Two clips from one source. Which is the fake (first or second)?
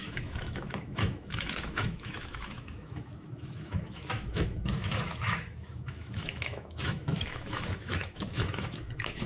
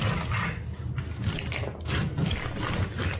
first